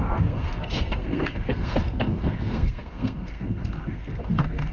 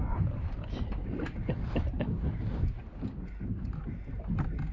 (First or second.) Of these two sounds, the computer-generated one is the first